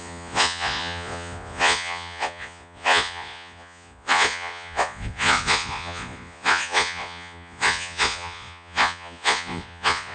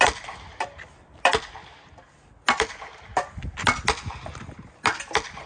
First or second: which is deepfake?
first